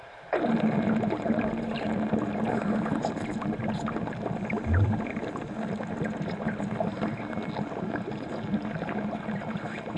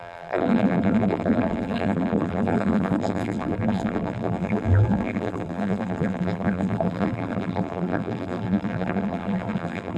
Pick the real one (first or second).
first